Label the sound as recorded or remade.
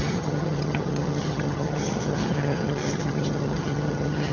remade